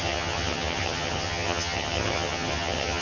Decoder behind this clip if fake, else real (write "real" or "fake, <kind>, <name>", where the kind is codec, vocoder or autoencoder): fake, vocoder, HiFi-GAN